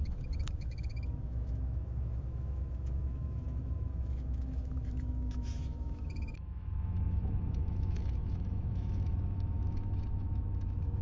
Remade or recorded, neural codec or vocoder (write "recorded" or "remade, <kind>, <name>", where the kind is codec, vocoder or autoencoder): remade, autoencoder, DAC-VAE